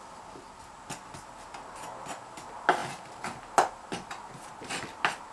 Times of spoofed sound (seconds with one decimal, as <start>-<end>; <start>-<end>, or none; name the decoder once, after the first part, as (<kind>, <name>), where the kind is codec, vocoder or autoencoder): none